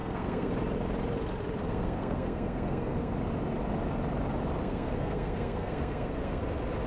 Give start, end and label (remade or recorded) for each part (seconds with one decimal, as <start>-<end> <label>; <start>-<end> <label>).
0.0-0.5 remade; 0.5-1.6 recorded; 1.6-3.1 remade; 3.1-4.6 recorded; 4.6-6.4 remade; 6.4-6.9 recorded